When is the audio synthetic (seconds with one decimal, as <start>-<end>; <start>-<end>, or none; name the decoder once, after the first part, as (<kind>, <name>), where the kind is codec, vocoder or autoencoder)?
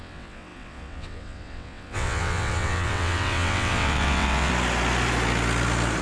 0.0-4.5 (vocoder, WaveNeXt)